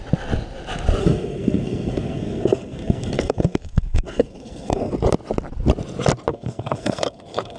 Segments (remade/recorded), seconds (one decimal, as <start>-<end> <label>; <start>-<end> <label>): 0.0-1.0 recorded; 1.0-4.9 remade; 4.9-6.3 recorded; 6.3-7.6 remade